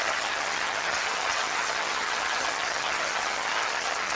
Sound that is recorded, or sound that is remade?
remade